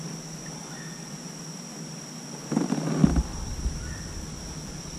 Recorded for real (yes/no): yes